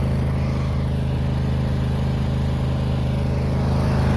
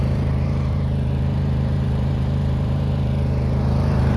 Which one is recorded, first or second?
first